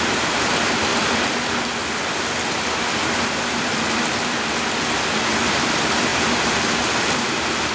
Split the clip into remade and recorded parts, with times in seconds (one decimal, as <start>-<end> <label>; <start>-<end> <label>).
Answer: 0.0-0.9 remade; 0.9-5.5 recorded; 5.5-6.1 remade; 6.1-7.1 recorded; 7.1-7.7 remade

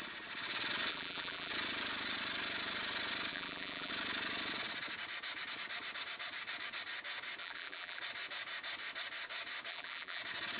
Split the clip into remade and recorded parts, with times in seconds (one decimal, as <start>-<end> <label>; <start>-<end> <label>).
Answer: 0.0-0.9 recorded; 0.9-1.5 remade; 1.5-3.3 recorded; 3.3-3.9 remade; 3.9-7.4 recorded; 7.4-8.0 remade; 8.0-9.7 recorded; 9.7-10.2 remade; 10.2-10.6 recorded

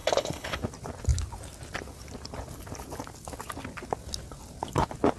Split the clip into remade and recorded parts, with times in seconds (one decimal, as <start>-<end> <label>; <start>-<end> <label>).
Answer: 0.0-0.6 remade; 0.6-5.2 recorded